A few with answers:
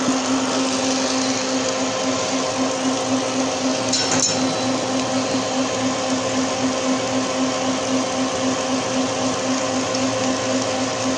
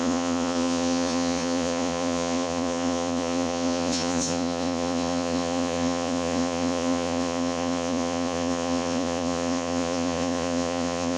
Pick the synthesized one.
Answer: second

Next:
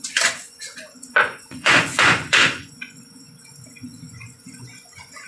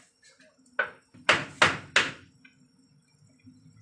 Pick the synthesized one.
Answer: first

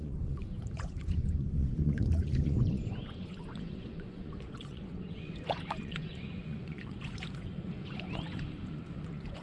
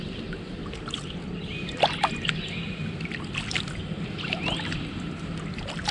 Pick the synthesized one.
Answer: first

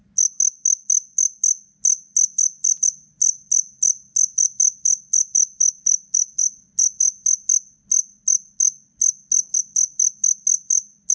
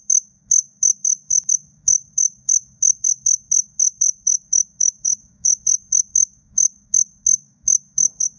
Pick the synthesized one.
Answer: second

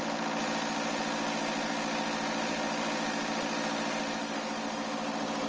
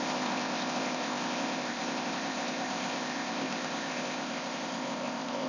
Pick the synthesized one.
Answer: second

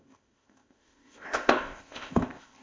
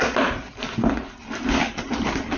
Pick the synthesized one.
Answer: first